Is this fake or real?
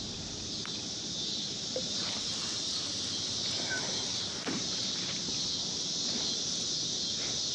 real